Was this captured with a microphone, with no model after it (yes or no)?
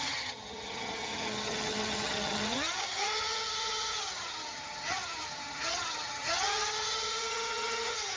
no